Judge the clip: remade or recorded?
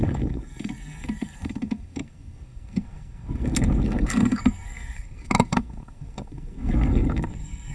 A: remade